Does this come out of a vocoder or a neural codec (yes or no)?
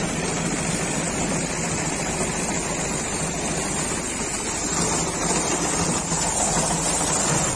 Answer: no